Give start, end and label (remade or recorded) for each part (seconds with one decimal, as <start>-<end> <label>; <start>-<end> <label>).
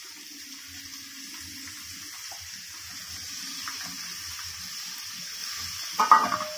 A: 0.0-6.6 recorded